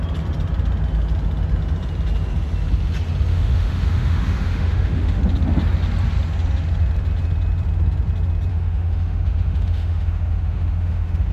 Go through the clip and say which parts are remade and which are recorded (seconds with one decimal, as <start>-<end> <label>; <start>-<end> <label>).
0.0-3.3 recorded; 3.3-5.2 remade; 5.2-8.5 recorded; 8.5-11.3 remade